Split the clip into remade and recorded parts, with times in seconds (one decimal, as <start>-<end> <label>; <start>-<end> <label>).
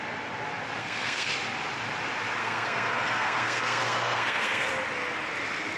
0.0-0.8 recorded; 0.8-1.3 remade; 1.3-2.4 recorded; 2.4-4.7 remade; 4.7-5.8 recorded